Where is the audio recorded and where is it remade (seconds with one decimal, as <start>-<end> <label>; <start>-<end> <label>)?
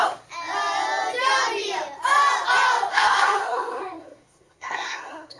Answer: 0.0-2.9 recorded; 2.9-5.4 remade